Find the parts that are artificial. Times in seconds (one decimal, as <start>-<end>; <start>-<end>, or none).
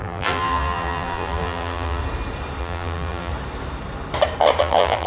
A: 0.0-2.0; 2.6-3.3; 4.6-5.1